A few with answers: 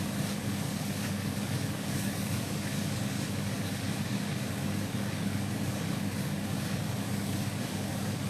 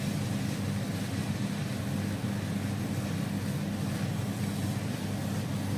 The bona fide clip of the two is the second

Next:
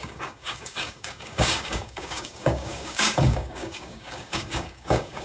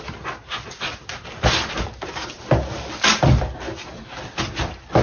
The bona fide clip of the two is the second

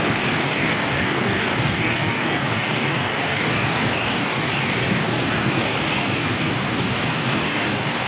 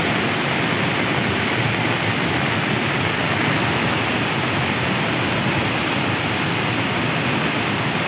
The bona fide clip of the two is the second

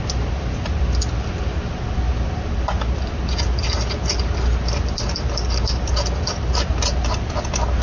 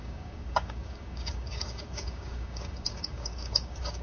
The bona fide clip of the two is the first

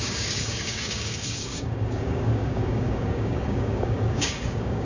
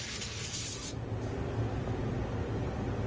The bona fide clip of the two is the second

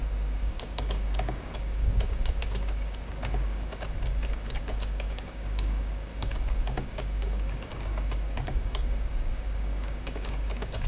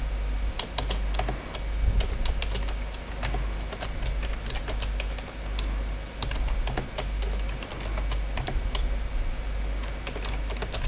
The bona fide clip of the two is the second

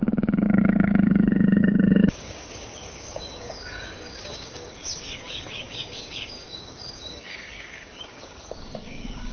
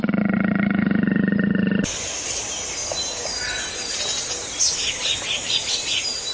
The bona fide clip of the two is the second